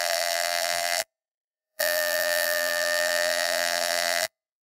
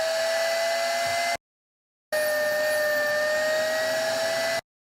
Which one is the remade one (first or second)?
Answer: first